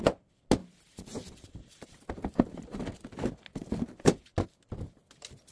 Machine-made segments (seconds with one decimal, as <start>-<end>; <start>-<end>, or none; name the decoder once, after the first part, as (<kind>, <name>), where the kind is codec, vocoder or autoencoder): 0.6-3.0 (vocoder, BigVGAN v2); 3.5-4.6